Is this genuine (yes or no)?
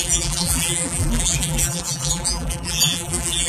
no